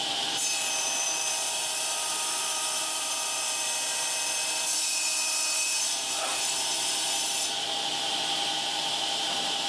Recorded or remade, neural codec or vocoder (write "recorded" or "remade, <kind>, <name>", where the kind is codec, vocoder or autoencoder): remade, vocoder, BigVGAN v2